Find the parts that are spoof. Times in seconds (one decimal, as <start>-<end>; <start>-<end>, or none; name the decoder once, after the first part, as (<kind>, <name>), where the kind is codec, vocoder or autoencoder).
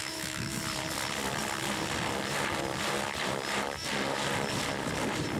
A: 0.0-0.6 (autoencoder, DAC-VAE)